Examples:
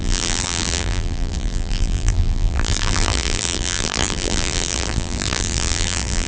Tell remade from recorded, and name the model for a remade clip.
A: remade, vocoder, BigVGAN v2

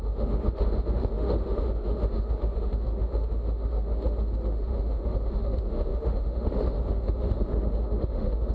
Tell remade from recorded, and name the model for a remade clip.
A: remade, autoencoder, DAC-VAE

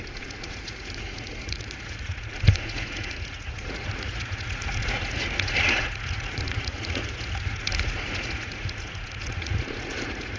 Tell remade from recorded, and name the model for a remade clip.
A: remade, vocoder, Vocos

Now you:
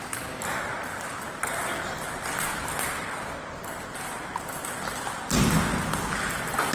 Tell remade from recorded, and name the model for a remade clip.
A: recorded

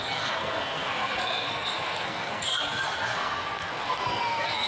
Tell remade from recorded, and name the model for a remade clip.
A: remade, codec, SNAC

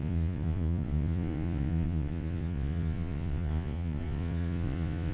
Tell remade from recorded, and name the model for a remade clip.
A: remade, vocoder, Vocos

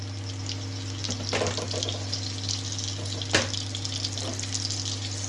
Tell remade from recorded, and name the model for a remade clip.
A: recorded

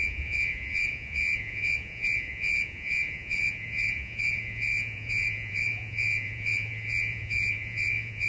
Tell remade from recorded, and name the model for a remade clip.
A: remade, vocoder, Vocos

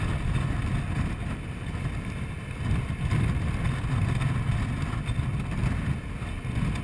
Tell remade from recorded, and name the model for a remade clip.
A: recorded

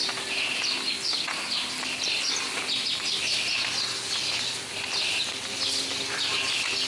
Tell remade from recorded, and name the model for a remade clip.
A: recorded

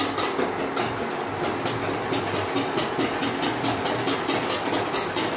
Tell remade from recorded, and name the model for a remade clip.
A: recorded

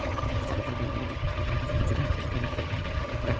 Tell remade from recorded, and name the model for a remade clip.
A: remade, vocoder, HiFi-GAN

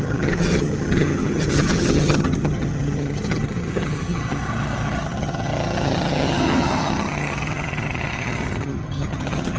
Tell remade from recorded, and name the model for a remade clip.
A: remade, vocoder, HiFi-GAN